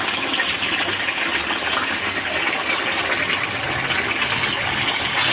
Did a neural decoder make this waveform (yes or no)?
no